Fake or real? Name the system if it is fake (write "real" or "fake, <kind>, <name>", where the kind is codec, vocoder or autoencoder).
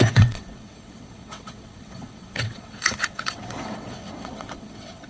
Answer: fake, vocoder, WaveNeXt